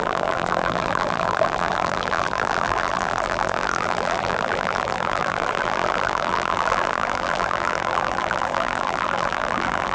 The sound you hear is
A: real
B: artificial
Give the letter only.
B